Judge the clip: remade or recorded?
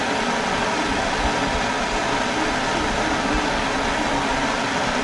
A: recorded